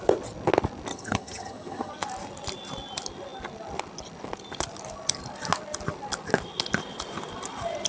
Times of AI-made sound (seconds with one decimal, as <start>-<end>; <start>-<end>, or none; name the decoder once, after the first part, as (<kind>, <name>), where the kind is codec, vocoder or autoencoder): 0.9-1.9 (vocoder, HiFi-GAN)